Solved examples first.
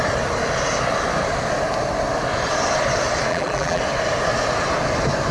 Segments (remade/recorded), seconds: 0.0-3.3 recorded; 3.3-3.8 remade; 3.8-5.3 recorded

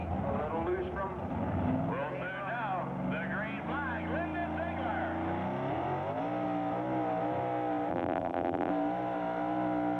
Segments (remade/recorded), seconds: 0.0-7.9 recorded; 7.9-8.7 remade; 8.7-10.0 recorded